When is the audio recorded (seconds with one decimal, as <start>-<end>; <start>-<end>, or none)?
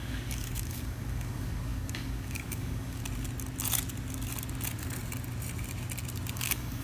3.0-6.3